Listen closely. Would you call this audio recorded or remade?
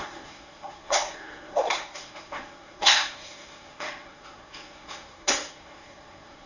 remade